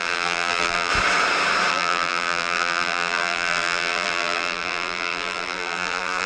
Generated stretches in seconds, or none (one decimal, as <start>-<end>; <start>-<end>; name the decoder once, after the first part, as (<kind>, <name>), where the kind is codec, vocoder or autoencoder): 0.0-0.9 (vocoder, BigVGAN v2); 1.7-6.3